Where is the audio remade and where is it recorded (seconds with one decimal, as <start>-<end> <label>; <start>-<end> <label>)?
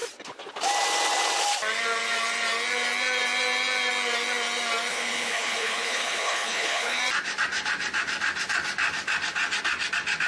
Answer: 0.0-4.9 recorded; 4.9-7.0 remade; 7.0-10.3 recorded